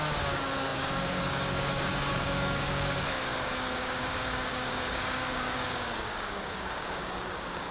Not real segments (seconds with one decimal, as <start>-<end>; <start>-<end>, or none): 0.0-7.7